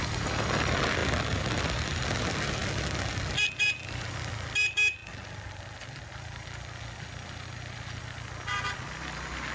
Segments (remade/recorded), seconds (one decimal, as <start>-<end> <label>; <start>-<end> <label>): 0.0-9.5 recorded